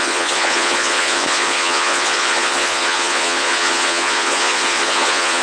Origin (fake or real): fake